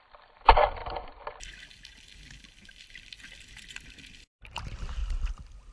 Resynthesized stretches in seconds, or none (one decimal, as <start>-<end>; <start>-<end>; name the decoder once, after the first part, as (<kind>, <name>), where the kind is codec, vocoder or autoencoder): 0.0-0.8 (vocoder, BigVGAN v2); 2.8-5.0